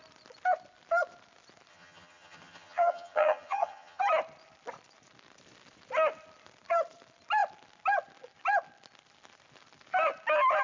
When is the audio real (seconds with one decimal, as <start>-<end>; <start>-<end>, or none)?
0.0-1.7; 4.0-10.6